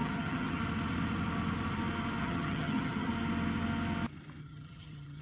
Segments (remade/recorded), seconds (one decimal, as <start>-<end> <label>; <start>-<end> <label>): 0.0-0.6 remade; 0.6-2.2 recorded; 2.2-3.1 remade; 3.1-4.4 recorded; 4.4-5.2 remade